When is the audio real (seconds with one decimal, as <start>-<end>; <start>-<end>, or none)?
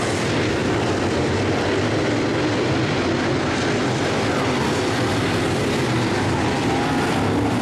0.0-7.6